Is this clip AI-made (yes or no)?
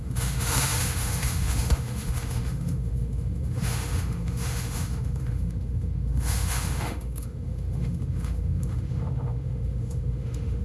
yes